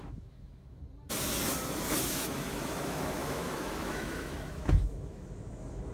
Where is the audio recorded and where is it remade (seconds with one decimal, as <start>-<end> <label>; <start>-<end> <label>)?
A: 0.0-0.8 remade; 0.8-2.0 recorded; 2.0-5.9 remade

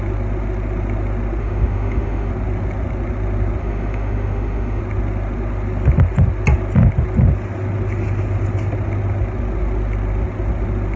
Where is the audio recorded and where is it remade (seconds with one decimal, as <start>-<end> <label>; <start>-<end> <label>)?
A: 0.0-1.4 recorded; 1.4-2.3 remade; 2.3-3.6 recorded; 3.6-4.8 remade; 4.8-11.0 recorded